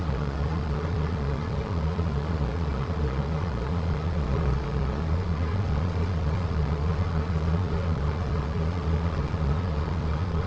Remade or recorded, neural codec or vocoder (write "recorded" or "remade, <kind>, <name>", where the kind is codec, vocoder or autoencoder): remade, vocoder, Vocos